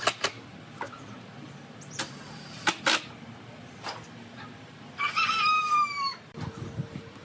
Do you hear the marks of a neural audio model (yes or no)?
yes